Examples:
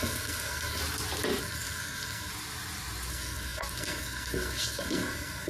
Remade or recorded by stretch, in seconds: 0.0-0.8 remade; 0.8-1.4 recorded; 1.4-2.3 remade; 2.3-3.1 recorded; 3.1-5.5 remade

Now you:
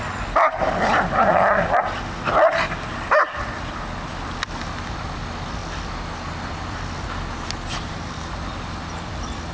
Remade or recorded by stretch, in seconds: 0.0-5.6 remade; 5.6-6.5 recorded; 6.5-9.5 remade

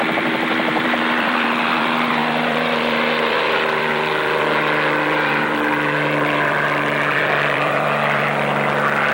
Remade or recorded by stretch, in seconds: 0.0-9.1 remade